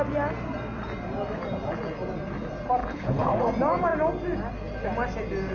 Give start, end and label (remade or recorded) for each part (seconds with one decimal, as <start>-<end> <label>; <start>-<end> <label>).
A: 0.0-2.8 recorded; 2.8-3.4 remade; 3.4-5.5 recorded